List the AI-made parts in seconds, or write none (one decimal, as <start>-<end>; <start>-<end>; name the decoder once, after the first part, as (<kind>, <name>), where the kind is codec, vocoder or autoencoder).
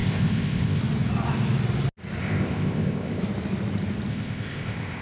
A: 0.0-0.8 (codec, ZipCodec); 2.2-3.2; 4.1-5.0